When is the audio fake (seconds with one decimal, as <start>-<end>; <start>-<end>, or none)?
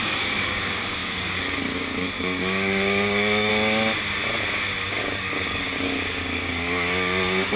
0.0-3.5; 5.0-7.6